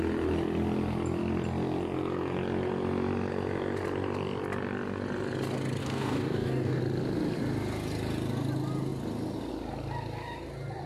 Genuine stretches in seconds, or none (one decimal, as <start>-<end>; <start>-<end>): 0.0-5.8; 6.8-10.9